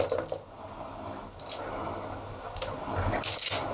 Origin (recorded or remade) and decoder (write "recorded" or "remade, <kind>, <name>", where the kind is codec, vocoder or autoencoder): recorded